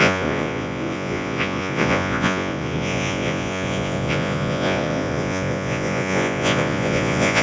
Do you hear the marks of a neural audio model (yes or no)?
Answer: yes